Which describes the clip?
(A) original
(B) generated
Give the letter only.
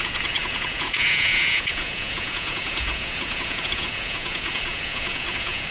B